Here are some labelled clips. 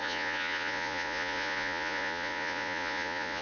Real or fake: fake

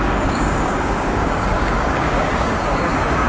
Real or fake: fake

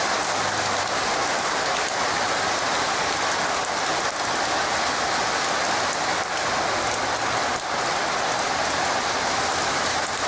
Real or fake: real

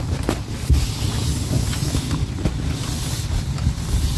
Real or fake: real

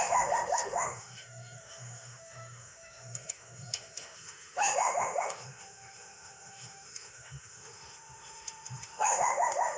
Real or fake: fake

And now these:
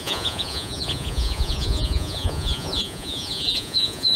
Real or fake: fake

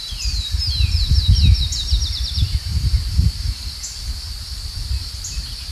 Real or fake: fake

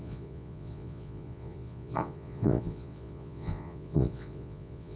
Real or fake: fake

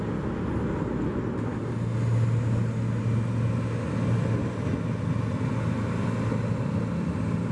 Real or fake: real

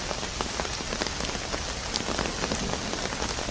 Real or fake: real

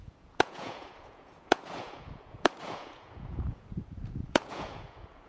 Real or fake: fake